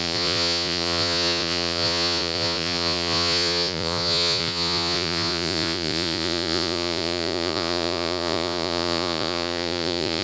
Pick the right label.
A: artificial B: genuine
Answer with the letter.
A